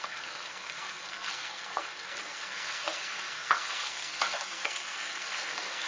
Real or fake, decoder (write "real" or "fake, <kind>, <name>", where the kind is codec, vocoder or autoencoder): fake, codec, SNAC